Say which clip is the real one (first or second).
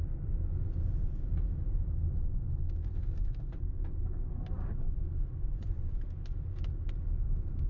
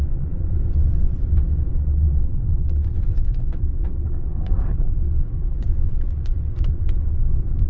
first